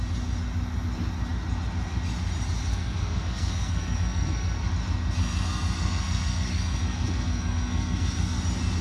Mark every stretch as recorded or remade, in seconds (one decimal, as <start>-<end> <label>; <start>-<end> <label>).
0.0-2.7 recorded; 2.7-4.7 remade; 4.7-5.2 recorded; 5.2-8.4 remade; 8.4-8.8 recorded